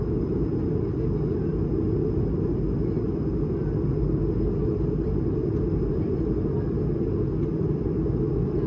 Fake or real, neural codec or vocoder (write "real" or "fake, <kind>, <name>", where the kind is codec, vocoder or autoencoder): real